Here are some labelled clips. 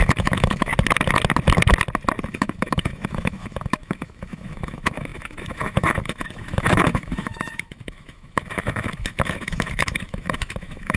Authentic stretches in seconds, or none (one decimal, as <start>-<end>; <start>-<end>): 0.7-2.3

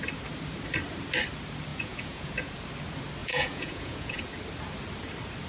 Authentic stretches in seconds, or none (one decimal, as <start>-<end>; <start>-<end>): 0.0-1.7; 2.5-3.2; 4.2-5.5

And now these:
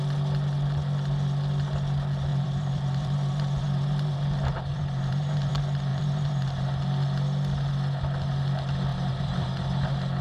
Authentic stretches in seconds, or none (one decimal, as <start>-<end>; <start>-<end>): 0.0-2.3; 5.5-5.9; 6.8-8.9; 9.5-10.2

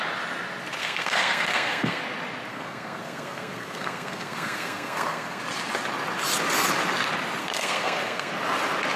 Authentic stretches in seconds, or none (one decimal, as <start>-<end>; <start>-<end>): 0.0-0.8; 2.0-2.5; 5.4-7.4; 8.3-9.0